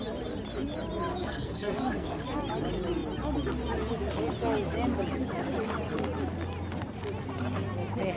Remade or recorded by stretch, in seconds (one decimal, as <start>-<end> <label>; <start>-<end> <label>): 0.0-1.1 recorded; 1.1-2.2 remade; 2.2-8.2 recorded